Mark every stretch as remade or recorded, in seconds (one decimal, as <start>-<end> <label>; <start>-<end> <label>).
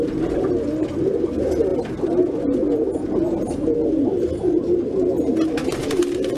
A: 0.0-6.4 recorded